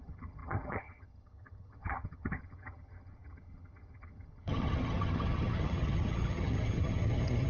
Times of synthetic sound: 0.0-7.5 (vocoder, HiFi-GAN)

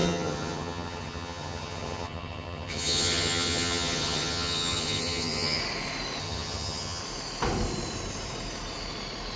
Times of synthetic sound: 0.0-5.6 (vocoder, HiFi-GAN); 6.2-7.0

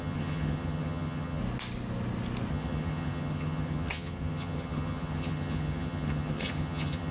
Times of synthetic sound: 0.0-1.4 (vocoder, HiFi-GAN); 2.5-7.1

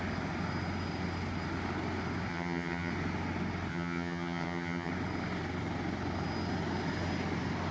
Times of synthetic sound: 2.3-2.9 (vocoder, HiFi-GAN); 3.7-4.9